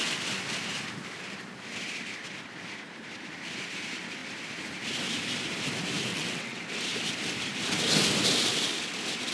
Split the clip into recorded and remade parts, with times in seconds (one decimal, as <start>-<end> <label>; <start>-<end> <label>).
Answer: 0.0-6.1 recorded; 6.1-6.6 remade; 6.6-9.3 recorded

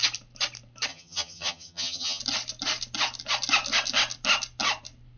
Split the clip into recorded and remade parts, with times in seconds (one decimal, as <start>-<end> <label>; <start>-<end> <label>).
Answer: 0.0-0.9 recorded; 0.9-2.2 remade; 2.2-5.2 recorded

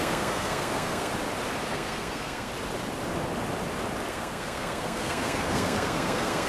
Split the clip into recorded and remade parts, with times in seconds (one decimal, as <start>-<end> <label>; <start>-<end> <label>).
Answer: 0.0-1.1 remade; 1.1-1.7 recorded; 1.7-2.5 remade; 2.5-4.1 recorded; 4.1-6.5 remade

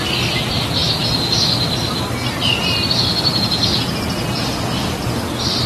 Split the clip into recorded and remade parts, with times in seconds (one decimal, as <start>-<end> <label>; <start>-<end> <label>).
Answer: 0.0-2.7 recorded; 2.7-4.0 remade; 4.0-5.7 recorded

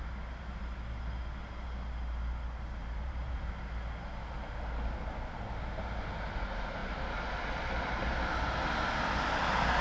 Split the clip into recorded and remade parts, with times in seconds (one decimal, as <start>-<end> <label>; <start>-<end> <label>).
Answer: 0.0-2.8 recorded; 2.8-3.5 remade; 3.5-9.8 recorded

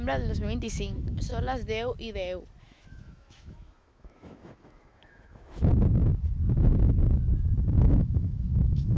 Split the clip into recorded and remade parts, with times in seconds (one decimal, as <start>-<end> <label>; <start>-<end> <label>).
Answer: 0.0-1.3 remade; 1.3-2.6 recorded; 2.6-5.7 remade; 5.7-7.8 recorded; 7.8-9.0 remade

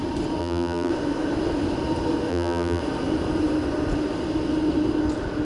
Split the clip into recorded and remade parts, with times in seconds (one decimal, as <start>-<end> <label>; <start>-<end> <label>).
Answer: 0.0-0.4 recorded; 0.4-0.9 remade; 0.9-2.3 recorded; 2.3-2.8 remade; 2.8-5.4 recorded

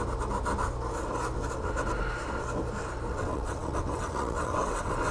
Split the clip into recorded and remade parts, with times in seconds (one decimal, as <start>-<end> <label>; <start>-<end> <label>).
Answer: 0.0-3.1 recorded; 3.1-5.1 remade